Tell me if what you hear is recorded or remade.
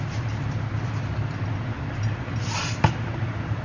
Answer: recorded